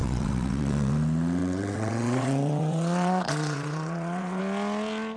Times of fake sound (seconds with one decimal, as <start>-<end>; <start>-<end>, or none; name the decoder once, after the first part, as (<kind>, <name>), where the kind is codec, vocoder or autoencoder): 0.0-0.9 (vocoder, WaveNeXt); 1.4-4.4